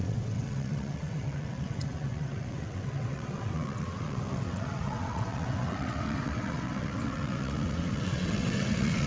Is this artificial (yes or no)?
yes